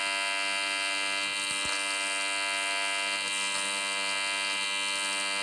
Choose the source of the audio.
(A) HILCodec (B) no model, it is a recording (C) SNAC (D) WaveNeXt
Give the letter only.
B